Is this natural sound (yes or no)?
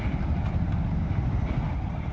yes